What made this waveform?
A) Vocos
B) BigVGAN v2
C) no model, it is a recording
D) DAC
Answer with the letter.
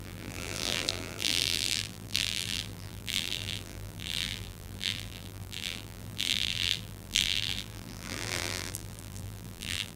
B